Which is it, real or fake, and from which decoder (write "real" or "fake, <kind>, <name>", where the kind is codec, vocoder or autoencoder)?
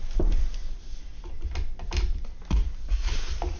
real